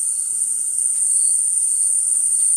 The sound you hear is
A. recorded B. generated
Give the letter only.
A